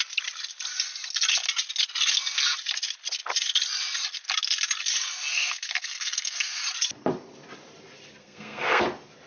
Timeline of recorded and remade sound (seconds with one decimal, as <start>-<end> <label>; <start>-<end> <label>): 0.0-5.3 recorded; 5.3-6.6 remade; 6.6-8.2 recorded; 8.2-8.8 remade; 8.8-9.3 recorded